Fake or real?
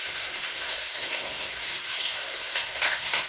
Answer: fake